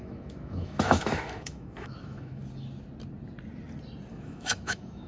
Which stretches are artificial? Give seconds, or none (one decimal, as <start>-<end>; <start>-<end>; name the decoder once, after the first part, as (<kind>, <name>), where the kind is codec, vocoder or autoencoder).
0.0-2.4 (autoencoder, DAC-VAE); 4.1-5.1